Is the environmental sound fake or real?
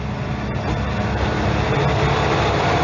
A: real